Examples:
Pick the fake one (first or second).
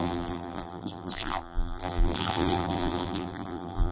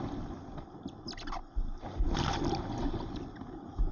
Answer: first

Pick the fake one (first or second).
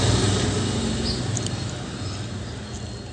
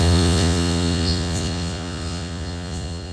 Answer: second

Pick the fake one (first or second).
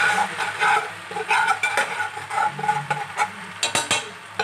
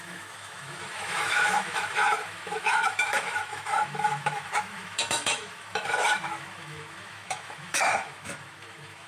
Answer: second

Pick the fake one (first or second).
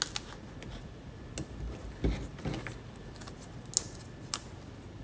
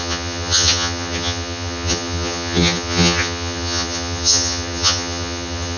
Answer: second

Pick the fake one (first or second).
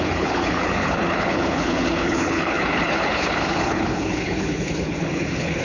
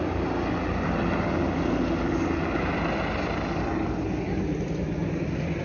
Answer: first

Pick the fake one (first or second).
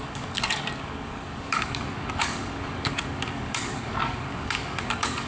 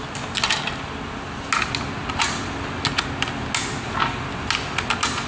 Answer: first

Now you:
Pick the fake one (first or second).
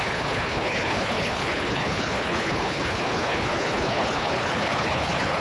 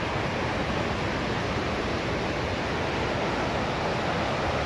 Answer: first